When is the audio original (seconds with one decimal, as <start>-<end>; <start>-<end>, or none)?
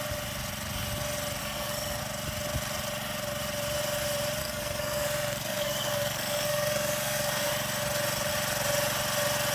0.0-1.4; 2.0-4.4; 7.5-9.5